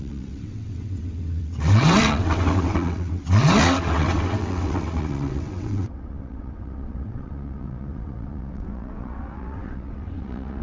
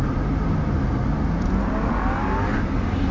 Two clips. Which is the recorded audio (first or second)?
second